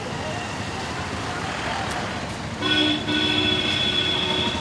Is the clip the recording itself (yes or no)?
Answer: yes